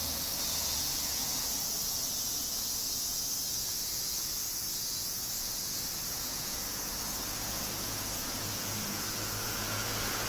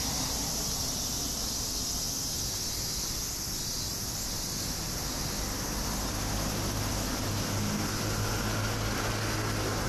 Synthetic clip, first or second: first